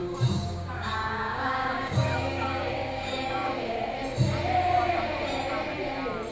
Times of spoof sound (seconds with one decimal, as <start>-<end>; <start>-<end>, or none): 0.0-3.8